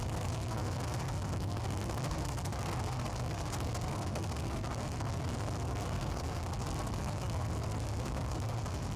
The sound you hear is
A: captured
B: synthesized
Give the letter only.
B